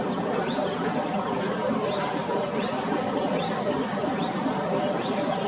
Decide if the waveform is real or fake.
real